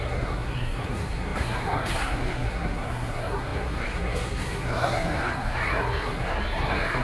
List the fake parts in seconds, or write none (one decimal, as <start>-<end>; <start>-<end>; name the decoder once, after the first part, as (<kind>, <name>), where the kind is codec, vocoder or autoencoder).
0.0-7.0 (codec, SNAC)